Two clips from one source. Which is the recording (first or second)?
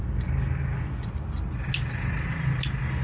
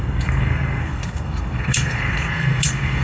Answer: first